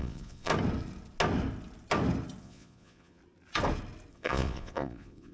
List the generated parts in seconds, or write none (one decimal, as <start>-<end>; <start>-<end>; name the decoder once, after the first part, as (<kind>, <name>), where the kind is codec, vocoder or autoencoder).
0.0-0.5 (vocoder, Vocos); 2.4-3.2; 4.1-5.3